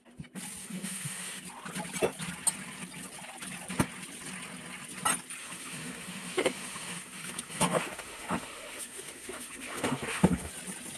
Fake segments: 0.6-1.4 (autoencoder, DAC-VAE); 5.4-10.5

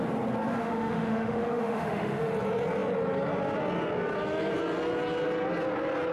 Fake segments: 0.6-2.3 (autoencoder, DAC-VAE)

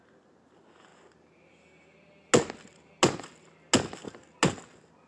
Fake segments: none

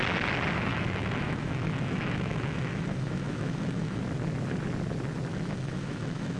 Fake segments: 0.7-4.0 (autoencoder, DAC-VAE); 5.3-6.4